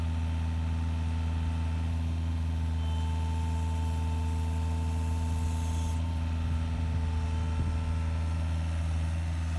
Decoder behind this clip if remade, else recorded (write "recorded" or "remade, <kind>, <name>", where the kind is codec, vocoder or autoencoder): recorded